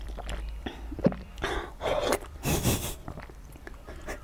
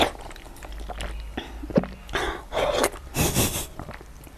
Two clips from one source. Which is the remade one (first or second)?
first